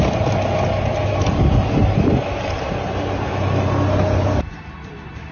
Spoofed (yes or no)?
no